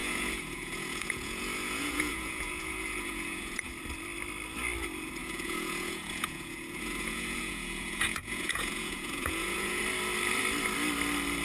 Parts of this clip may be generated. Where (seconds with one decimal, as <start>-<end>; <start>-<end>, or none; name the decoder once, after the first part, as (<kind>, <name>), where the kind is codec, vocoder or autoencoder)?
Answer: 0.0-3.7 (vocoder, Vocos); 5.2-9.8